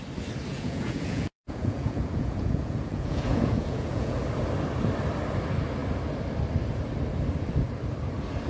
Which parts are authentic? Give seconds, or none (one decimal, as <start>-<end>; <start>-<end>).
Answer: 0.0-0.5; 4.2-8.5